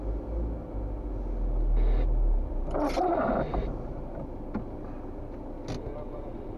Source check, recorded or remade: recorded